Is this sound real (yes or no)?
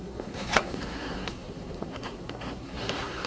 no